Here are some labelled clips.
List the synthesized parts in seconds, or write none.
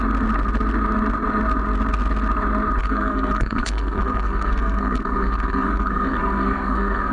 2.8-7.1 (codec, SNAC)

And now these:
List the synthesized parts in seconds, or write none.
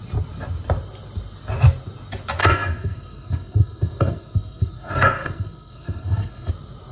2.4-6.5 (codec, SNAC)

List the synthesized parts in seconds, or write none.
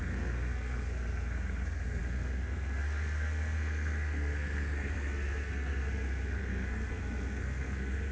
0.0-8.1 (codec, SNAC)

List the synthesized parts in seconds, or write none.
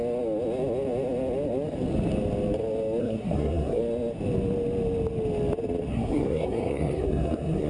3.0-3.8 (codec, SNAC); 5.9-7.7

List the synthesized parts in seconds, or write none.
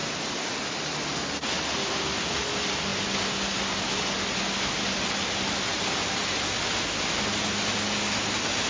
none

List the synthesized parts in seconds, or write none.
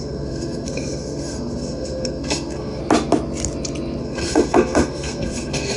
0.0-2.8 (codec, SNAC); 4.0-5.8